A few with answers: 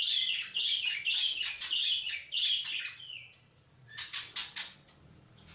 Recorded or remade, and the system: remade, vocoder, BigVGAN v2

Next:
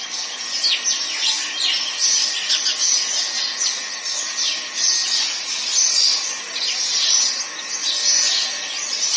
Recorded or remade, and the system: recorded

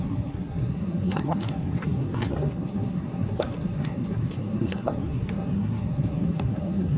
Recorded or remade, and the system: remade, codec, SNAC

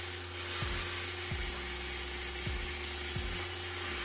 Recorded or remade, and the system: recorded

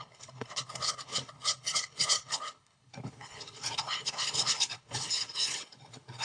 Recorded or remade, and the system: remade, codec, HILCodec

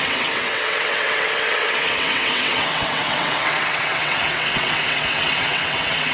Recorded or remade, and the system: remade, vocoder, WaveNeXt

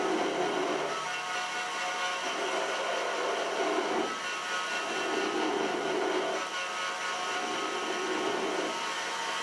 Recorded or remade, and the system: recorded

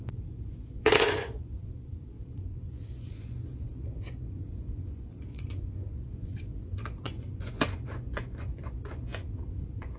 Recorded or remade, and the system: remade, vocoder, Vocos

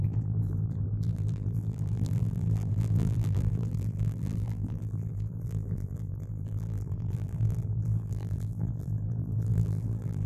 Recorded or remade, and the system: remade, vocoder, BigVGAN v2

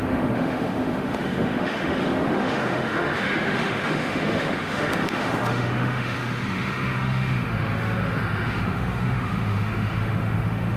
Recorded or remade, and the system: remade, autoencoder, DAC-VAE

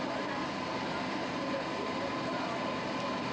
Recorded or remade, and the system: recorded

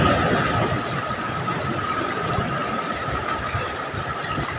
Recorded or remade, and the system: recorded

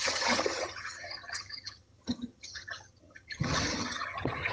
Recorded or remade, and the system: remade, vocoder, HiFi-GAN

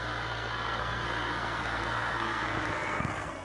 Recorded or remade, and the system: remade, codec, SNAC